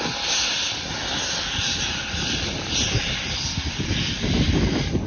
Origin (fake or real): fake